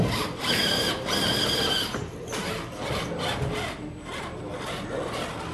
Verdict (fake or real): real